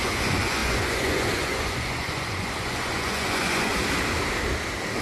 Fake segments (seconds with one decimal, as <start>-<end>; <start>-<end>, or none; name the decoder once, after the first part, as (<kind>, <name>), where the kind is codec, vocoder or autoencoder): 0.0-3.7 (vocoder, Vocos)